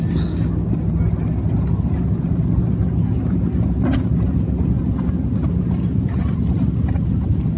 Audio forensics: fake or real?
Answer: real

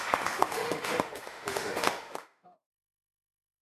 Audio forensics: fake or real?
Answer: fake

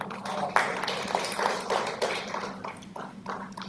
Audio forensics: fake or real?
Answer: real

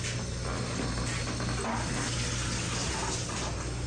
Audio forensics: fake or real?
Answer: real